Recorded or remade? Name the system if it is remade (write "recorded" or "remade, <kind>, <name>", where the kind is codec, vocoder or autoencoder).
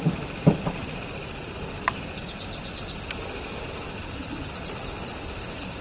recorded